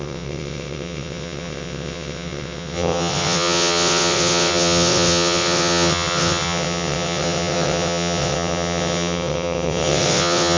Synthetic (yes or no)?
yes